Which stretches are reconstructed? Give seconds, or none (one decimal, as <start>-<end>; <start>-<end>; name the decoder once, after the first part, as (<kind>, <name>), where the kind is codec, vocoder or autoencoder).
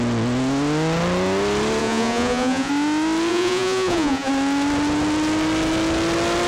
1.8-2.7 (vocoder, Vocos); 3.3-4.3